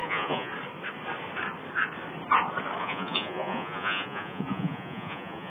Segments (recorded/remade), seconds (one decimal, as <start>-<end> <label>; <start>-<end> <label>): 0.0-0.5 remade; 0.5-2.8 recorded; 2.8-5.5 remade